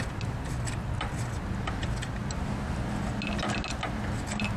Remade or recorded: recorded